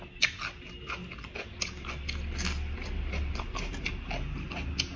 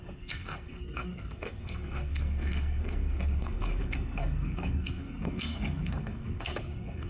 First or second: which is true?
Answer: first